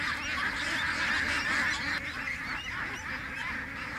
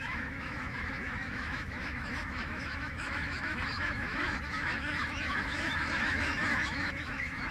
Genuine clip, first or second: first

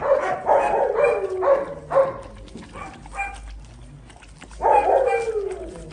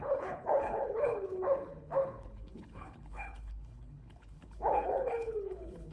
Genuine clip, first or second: first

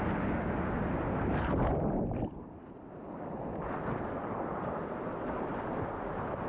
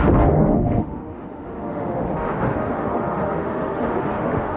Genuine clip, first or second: first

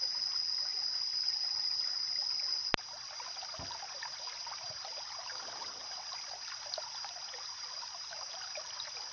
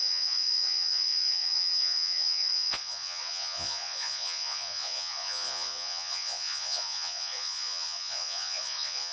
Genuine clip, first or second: first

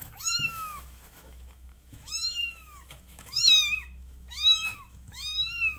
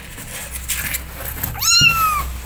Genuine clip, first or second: second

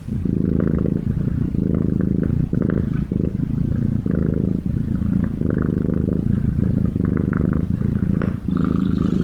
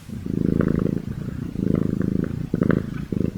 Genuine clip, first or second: first